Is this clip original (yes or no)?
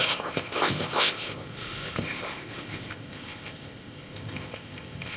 no